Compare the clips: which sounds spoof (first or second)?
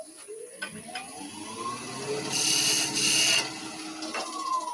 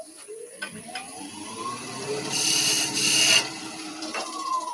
second